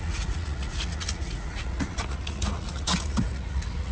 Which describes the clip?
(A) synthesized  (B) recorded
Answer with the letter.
A